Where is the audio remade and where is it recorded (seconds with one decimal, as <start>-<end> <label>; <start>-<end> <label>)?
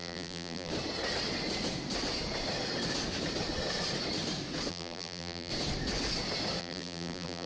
0.0-0.7 remade; 0.7-4.7 recorded; 4.7-5.5 remade; 5.5-6.6 recorded; 6.6-7.5 remade